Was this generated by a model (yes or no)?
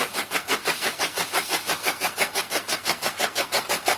yes